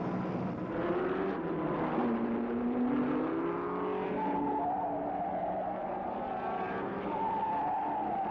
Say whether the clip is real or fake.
real